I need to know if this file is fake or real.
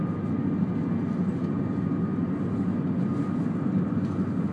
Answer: real